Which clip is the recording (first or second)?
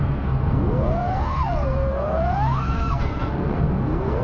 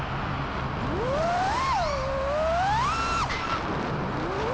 second